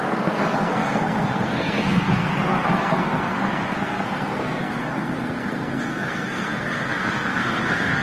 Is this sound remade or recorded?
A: remade